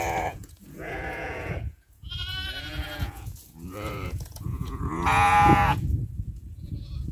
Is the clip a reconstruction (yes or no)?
yes